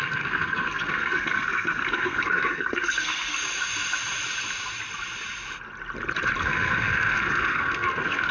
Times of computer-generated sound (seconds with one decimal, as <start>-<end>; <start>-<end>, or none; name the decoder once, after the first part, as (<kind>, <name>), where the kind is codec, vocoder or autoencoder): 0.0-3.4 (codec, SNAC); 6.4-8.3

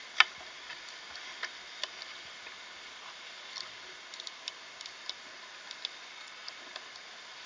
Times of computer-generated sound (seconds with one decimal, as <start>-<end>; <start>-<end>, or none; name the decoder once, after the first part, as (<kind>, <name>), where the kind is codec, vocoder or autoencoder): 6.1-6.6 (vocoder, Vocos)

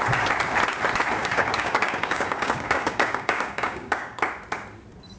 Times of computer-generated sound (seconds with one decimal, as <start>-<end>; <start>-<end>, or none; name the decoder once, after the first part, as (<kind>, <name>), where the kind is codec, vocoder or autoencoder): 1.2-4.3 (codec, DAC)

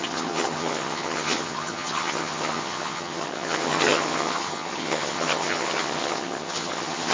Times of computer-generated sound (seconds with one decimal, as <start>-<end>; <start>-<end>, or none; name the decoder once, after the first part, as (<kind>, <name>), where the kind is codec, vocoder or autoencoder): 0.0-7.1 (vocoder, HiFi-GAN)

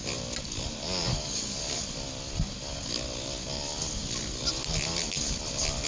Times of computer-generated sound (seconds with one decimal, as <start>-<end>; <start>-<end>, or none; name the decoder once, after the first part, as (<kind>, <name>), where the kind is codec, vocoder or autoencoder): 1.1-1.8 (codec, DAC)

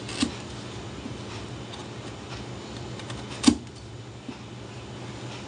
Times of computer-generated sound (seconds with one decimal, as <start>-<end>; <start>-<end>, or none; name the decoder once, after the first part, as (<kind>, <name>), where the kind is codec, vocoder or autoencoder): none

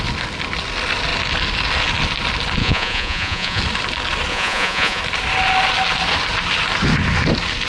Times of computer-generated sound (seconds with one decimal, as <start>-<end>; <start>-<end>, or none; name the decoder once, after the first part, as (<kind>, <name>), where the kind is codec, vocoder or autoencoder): 2.6-3.6 (vocoder, Vocos); 4.3-5.0

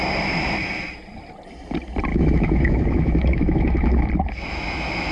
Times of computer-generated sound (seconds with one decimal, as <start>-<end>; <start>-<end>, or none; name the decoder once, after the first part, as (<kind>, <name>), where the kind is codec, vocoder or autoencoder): 2.1-4.1 (autoencoder, DAC-VAE)